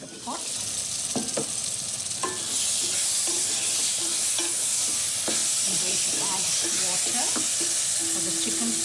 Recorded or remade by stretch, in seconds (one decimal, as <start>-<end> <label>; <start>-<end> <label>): 0.0-8.8 recorded